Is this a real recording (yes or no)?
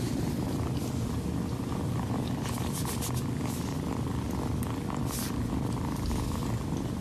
yes